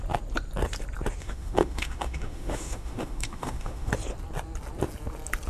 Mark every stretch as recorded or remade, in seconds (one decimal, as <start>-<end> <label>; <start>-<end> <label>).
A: 0.0-1.2 recorded; 1.2-3.9 remade; 3.9-5.5 recorded